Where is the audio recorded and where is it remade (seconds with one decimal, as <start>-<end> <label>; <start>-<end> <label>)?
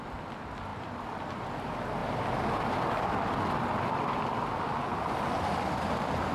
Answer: 0.0-0.7 recorded; 0.7-1.4 remade; 1.4-2.0 recorded; 2.0-2.8 remade; 2.8-6.3 recorded